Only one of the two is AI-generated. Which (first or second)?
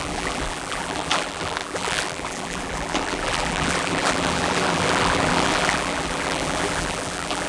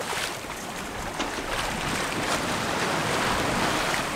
first